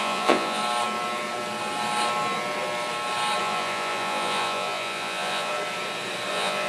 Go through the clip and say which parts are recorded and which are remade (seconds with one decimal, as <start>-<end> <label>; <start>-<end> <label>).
0.0-0.6 remade; 0.6-3.4 recorded; 3.4-5.5 remade; 5.5-6.3 recorded; 6.3-6.7 remade